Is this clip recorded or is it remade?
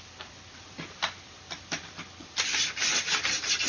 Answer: remade